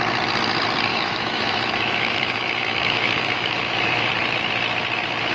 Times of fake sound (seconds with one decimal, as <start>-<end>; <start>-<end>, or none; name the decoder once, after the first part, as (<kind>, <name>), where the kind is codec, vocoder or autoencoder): 0.9-4.1 (autoencoder, DAC-VAE)